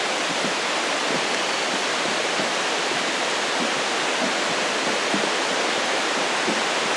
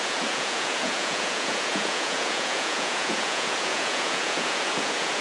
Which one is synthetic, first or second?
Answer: second